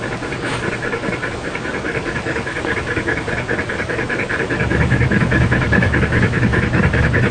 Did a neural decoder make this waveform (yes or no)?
yes